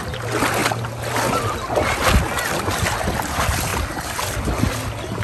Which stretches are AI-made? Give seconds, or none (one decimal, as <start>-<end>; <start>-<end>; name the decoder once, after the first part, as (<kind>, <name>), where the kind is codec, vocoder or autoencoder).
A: 3.7-4.6 (vocoder, BigVGAN v2)